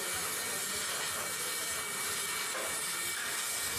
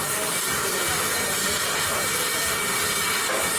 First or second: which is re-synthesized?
second